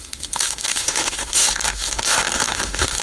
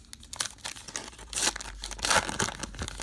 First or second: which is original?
second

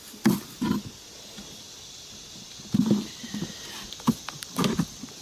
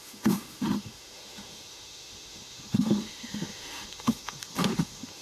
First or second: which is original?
first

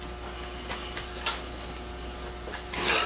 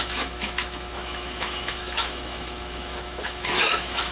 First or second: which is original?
first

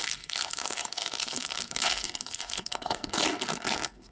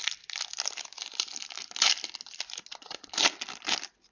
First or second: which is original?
second